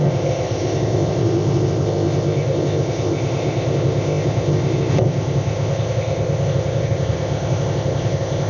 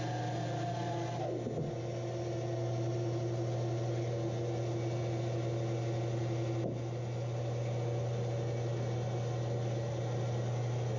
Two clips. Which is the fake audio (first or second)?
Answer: first